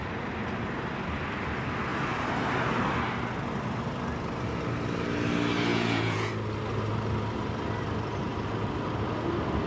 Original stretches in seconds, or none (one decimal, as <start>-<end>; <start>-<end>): 0.0-5.7; 6.3-9.7